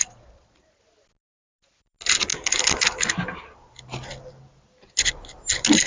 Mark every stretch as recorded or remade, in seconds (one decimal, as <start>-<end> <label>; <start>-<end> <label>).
0.0-5.9 recorded